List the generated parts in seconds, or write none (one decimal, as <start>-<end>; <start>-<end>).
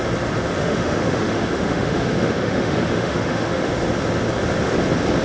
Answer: 0.6-3.7